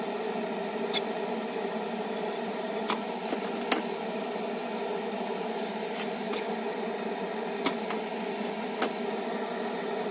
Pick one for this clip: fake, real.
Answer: real